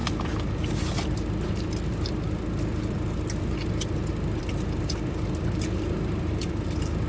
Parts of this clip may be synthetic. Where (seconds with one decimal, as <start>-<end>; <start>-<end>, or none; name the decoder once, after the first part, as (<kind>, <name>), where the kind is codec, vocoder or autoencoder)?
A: 4.1-7.1 (vocoder, BigVGAN v2)